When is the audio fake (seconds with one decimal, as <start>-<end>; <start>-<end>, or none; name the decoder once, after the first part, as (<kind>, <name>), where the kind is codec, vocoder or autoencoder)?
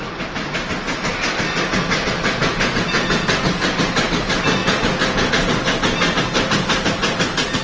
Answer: 2.4-3.8 (vocoder, Vocos); 4.6-5.3